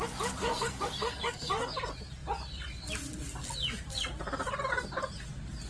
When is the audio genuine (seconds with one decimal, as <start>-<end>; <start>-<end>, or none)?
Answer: 0.0-0.4; 1.5-5.7